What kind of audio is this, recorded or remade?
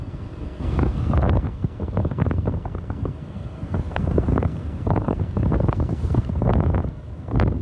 remade